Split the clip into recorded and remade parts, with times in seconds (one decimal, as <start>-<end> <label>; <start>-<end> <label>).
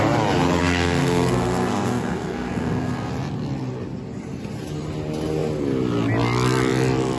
0.0-0.6 recorded; 0.6-3.1 remade; 3.1-7.2 recorded